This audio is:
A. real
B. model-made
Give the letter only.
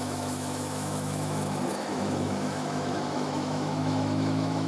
B